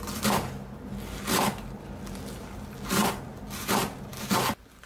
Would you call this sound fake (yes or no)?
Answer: no